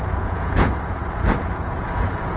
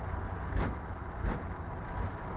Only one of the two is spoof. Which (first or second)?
first